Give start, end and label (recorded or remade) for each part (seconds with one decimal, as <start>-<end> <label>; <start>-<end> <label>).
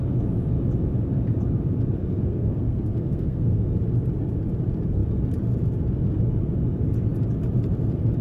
0.0-2.0 recorded; 2.0-3.7 remade; 3.7-8.2 recorded